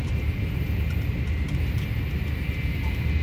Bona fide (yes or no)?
yes